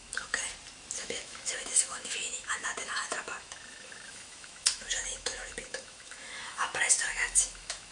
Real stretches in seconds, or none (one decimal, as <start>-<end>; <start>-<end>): 0.4-1.0